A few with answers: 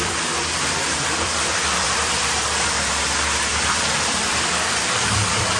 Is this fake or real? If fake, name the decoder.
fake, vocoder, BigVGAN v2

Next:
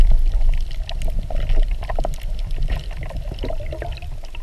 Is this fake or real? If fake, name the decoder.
real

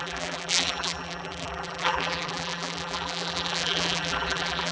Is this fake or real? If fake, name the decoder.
fake, vocoder, BigVGAN v2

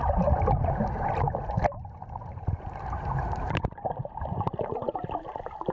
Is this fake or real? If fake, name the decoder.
fake, vocoder, BigVGAN v2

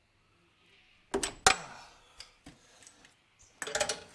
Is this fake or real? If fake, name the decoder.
real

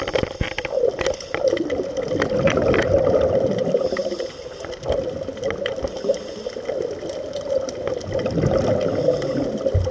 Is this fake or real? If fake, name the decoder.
fake, vocoder, BigVGAN v2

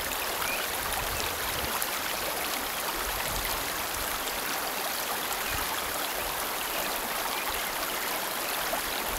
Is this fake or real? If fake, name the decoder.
fake, vocoder, BigVGAN v2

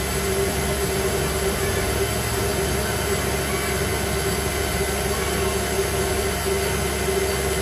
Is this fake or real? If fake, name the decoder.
real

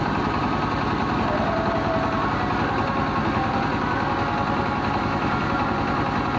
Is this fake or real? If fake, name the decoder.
real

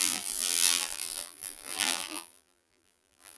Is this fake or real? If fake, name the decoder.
fake, vocoder, BigVGAN v2